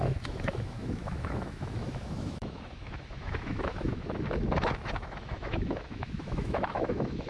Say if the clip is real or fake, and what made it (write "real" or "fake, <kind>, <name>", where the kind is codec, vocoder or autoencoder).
fake, autoencoder, DAC-VAE